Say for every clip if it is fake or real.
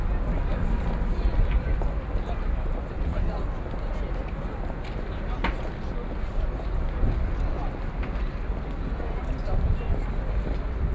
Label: real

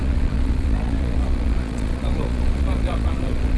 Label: fake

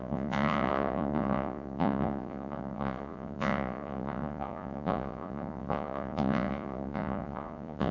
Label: fake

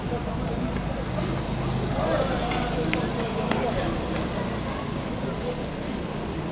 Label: real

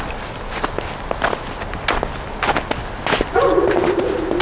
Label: real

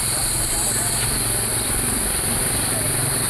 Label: real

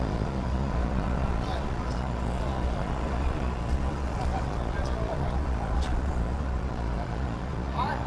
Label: fake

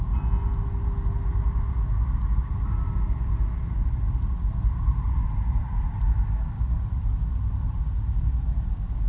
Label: real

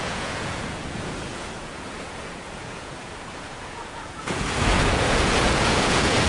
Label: fake